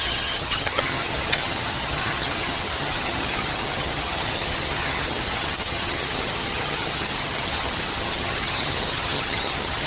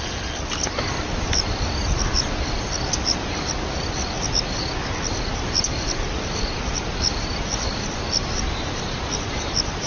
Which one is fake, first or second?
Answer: first